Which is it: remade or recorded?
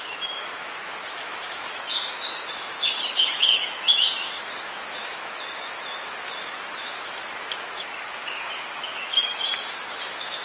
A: remade